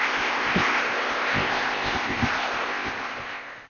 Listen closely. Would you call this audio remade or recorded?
remade